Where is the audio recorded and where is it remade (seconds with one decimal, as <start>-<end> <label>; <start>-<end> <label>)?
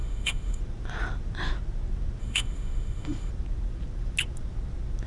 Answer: 0.0-0.6 remade; 0.6-2.2 recorded; 2.2-3.3 remade; 3.3-5.1 recorded